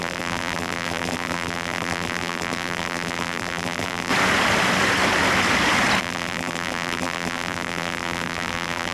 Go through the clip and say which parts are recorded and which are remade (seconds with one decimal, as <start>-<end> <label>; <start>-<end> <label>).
0.0-4.1 remade; 4.1-6.0 recorded; 6.0-8.9 remade

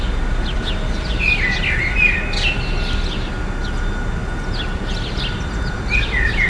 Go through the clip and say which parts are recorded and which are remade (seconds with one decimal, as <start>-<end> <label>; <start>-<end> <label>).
0.0-6.5 recorded

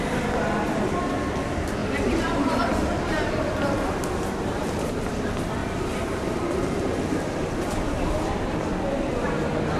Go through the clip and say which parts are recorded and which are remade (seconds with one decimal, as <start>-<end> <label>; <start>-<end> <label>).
0.0-1.8 recorded; 1.8-3.3 remade; 3.3-4.6 recorded; 4.6-5.1 remade; 5.1-5.6 recorded; 5.6-8.7 remade; 8.7-9.8 recorded

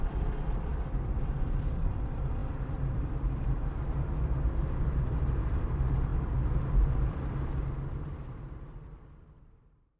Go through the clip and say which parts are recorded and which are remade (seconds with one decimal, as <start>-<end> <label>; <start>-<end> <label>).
0.0-6.1 remade; 6.1-9.4 recorded; 9.4-10.0 remade

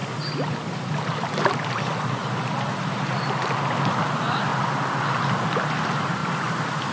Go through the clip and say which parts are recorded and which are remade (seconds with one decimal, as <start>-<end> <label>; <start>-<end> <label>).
0.0-2.1 recorded; 2.1-4.5 remade; 4.5-5.8 recorded; 5.8-6.9 remade

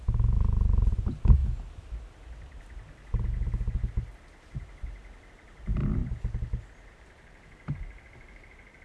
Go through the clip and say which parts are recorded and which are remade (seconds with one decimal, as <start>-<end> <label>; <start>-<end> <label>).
0.0-1.4 remade; 1.4-5.3 recorded; 5.3-6.0 remade; 6.0-6.7 recorded; 6.7-8.8 remade